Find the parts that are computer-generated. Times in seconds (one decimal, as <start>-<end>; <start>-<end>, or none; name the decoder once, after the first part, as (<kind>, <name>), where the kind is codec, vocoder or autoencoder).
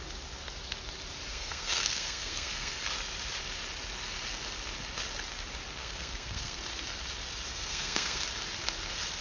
1.3-2.8 (codec, SNAC); 5.8-6.6; 7.5-8.2